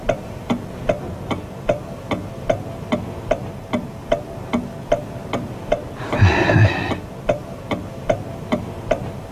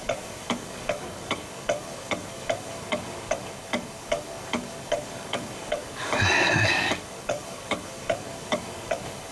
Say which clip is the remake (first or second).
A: second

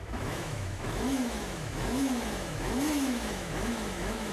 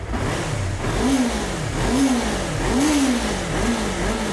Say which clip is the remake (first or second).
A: first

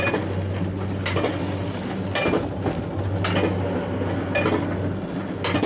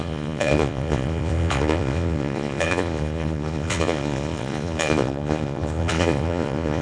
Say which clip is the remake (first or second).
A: second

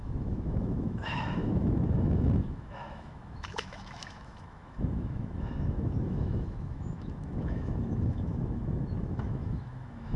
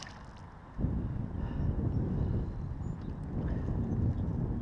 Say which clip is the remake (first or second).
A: first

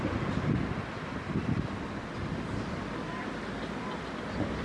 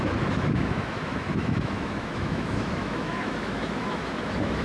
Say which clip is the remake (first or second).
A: second